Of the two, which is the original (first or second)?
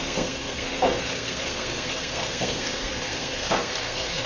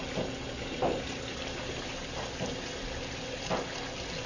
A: second